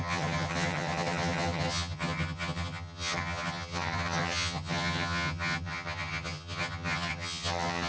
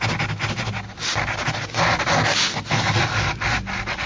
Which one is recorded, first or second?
second